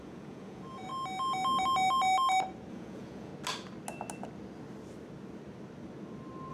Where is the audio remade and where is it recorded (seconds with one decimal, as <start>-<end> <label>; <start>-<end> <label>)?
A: 0.0-0.9 remade; 0.9-2.7 recorded; 2.7-3.3 remade; 3.3-6.5 recorded